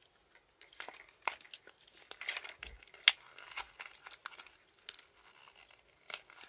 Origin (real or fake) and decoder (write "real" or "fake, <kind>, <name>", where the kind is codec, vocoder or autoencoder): real